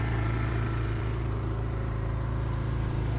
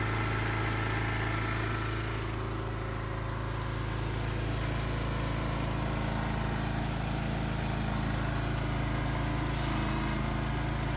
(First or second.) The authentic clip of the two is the second